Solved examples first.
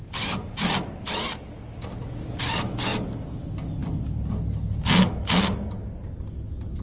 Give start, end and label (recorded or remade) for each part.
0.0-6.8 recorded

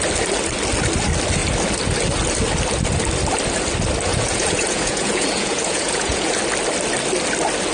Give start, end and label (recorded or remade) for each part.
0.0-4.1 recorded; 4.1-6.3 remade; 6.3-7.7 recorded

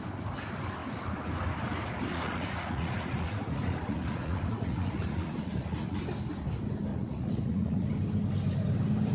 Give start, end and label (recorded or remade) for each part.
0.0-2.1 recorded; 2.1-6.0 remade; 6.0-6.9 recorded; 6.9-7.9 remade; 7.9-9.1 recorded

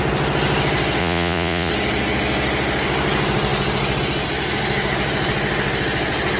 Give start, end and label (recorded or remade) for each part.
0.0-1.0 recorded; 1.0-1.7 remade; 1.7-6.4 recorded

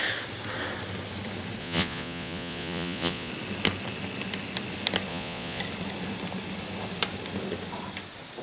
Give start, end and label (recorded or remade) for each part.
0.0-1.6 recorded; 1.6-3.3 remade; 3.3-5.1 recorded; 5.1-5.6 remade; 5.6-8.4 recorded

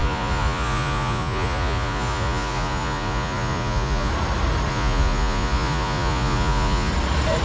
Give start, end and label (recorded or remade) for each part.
0.0-4.1 remade; 4.1-4.7 recorded; 4.7-6.9 remade; 6.9-7.4 recorded